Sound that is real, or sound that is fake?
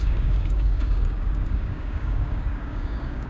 fake